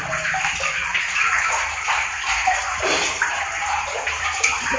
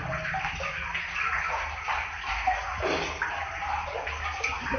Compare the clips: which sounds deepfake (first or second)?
first